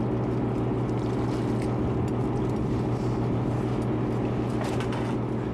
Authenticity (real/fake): real